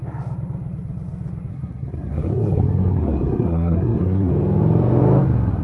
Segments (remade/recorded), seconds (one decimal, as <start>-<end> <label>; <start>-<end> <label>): 0.0-1.5 recorded; 1.5-4.3 remade; 4.3-5.6 recorded